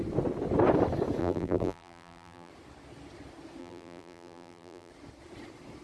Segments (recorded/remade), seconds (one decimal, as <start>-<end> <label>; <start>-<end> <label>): 0.0-1.2 recorded; 1.2-2.5 remade; 2.5-3.6 recorded; 3.6-4.9 remade; 4.9-5.8 recorded